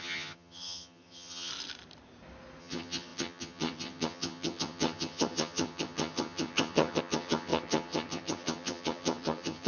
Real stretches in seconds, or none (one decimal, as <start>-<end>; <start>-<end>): 1.5-2.6